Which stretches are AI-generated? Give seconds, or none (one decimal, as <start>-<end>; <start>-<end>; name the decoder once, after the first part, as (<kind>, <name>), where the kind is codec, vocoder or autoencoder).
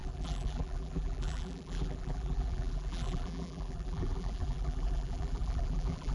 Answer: 0.0-6.1 (vocoder, BigVGAN v2)